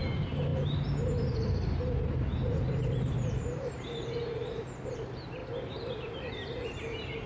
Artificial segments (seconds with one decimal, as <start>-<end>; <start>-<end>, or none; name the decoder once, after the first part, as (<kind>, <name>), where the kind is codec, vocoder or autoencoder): 0.0-5.4 (vocoder, BigVGAN v2); 6.3-7.3